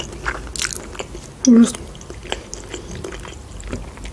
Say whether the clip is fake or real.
real